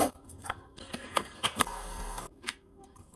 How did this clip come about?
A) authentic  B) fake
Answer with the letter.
B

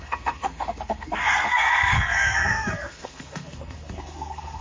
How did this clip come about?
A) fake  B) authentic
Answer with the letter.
A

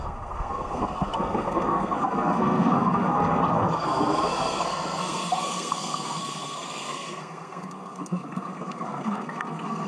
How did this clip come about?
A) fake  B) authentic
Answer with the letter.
A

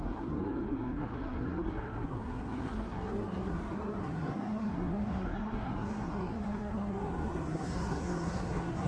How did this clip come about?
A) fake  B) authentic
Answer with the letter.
A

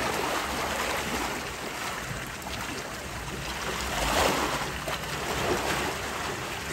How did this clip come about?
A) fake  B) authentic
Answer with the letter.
B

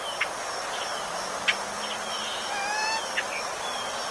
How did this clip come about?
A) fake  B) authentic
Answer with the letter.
B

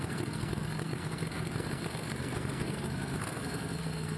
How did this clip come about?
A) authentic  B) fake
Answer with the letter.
B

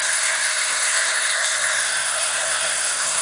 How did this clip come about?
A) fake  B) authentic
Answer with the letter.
A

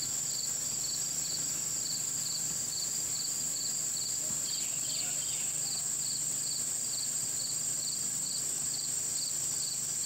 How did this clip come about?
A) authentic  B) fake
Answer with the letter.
B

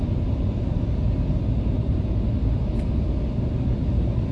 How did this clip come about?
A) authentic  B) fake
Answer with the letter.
A